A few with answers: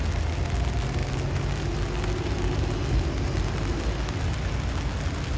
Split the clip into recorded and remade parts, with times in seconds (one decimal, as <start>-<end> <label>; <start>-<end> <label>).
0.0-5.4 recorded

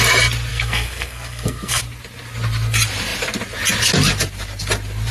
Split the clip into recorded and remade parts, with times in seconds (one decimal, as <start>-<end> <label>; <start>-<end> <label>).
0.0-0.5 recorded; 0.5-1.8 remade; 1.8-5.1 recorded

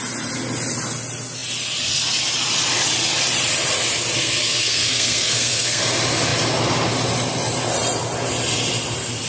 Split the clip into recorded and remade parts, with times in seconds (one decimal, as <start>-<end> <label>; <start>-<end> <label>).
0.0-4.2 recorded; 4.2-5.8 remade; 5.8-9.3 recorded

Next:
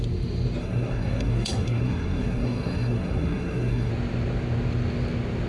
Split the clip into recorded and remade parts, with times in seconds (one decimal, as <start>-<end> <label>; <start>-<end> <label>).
0.0-0.6 recorded; 0.6-3.9 remade; 3.9-5.5 recorded

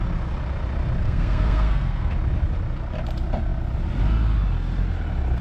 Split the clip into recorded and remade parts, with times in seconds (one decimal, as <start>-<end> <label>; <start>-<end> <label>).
0.0-1.0 recorded; 1.0-2.1 remade; 2.1-5.4 recorded

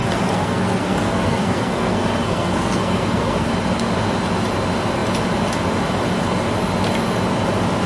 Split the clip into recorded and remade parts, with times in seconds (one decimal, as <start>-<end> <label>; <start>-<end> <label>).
0.0-3.5 remade; 3.5-7.9 recorded

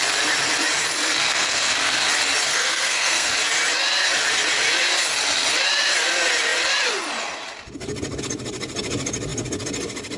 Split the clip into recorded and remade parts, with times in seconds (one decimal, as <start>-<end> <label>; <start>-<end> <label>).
0.0-1.2 recorded; 1.2-2.1 remade; 2.1-2.5 recorded; 2.5-3.3 remade; 3.3-10.2 recorded